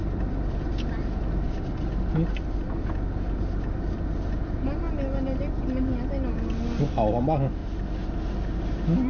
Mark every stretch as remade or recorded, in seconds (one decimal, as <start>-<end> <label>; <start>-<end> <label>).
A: 0.0-9.1 recorded

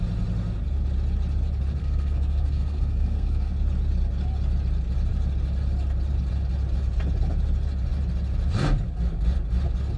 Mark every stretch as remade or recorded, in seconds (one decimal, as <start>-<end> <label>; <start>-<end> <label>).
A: 0.0-1.8 recorded; 1.8-3.5 remade; 3.5-10.0 recorded